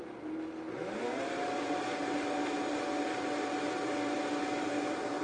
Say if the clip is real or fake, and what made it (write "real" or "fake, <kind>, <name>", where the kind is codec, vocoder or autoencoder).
real